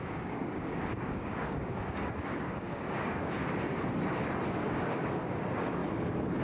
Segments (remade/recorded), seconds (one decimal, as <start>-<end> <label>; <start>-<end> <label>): 0.0-3.4 remade; 3.4-4.5 recorded; 4.5-5.8 remade; 5.8-6.4 recorded